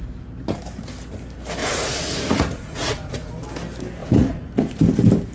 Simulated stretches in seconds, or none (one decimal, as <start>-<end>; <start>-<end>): 1.6-3.3; 4.0-4.5